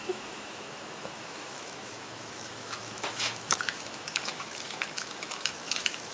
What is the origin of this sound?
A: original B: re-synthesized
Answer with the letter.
B